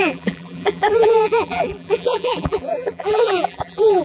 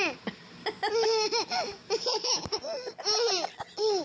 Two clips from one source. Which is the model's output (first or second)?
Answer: first